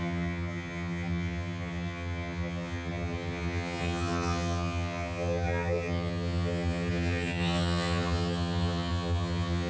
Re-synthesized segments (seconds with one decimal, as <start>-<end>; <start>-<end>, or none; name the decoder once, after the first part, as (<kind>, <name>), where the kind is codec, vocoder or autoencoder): 0.0-9.7 (vocoder, HiFi-GAN)